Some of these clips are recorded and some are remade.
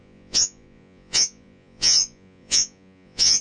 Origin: remade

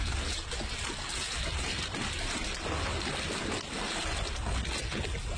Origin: recorded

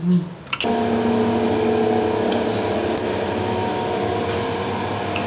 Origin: recorded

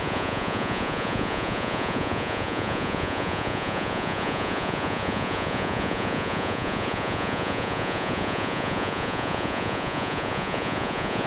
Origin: remade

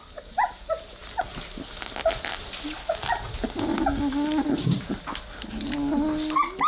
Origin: recorded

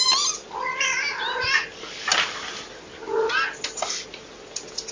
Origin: recorded